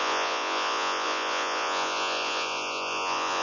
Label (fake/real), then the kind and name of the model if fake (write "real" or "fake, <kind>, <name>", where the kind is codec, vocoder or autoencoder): fake, vocoder, Vocos